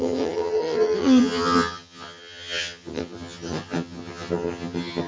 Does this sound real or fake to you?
fake